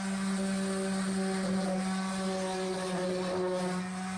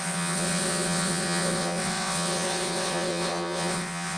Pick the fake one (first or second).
second